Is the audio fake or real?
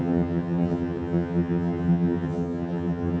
fake